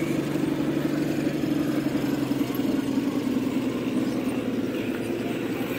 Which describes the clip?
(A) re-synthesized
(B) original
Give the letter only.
B